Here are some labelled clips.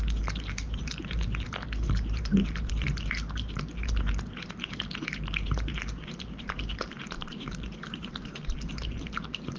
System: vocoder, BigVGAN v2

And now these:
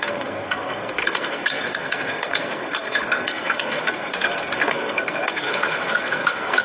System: codec, SNAC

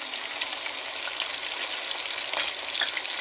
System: none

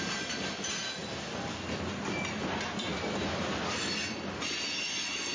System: none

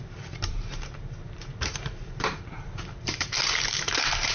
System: vocoder, BigVGAN v2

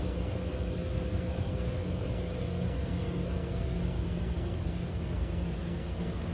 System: codec, SNAC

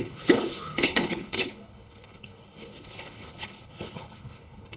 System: codec, HILCodec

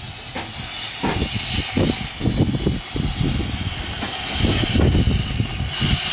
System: none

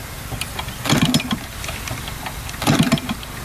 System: none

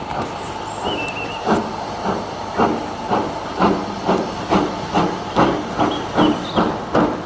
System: none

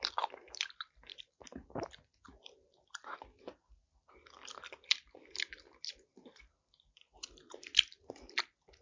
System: none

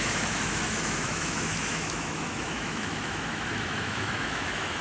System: autoencoder, DAC-VAE